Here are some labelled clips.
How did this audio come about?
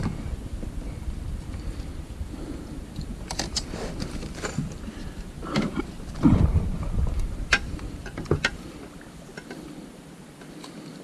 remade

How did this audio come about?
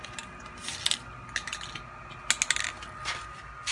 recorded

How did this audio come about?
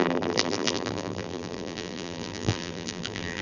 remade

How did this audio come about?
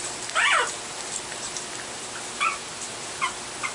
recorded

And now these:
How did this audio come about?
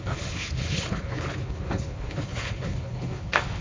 remade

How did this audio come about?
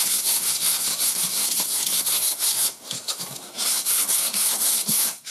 remade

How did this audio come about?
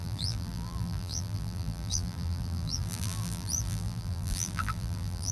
remade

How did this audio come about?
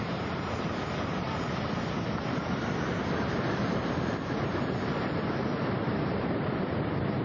remade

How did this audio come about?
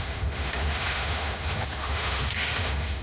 remade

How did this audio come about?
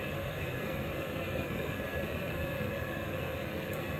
remade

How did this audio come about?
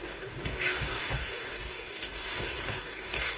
remade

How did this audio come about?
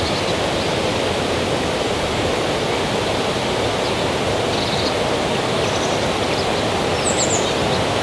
recorded